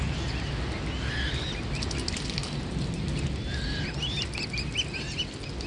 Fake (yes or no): no